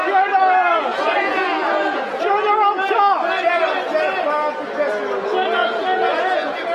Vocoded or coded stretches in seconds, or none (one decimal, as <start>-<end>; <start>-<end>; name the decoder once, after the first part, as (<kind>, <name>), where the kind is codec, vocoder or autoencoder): 0.4-2.2 (vocoder, Vocos); 5.6-6.7